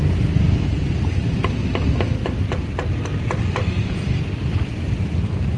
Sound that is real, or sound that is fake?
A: real